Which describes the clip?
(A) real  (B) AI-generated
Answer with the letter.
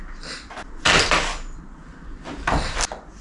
A